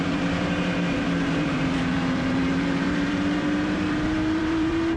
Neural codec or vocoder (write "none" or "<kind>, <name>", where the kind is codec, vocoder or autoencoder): vocoder, BigVGAN v2